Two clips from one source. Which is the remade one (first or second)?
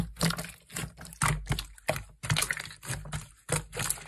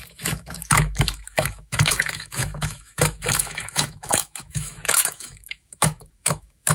second